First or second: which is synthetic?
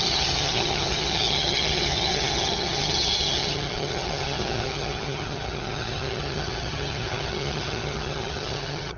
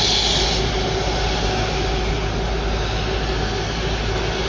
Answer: first